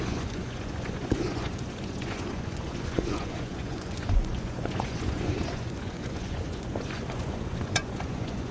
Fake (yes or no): yes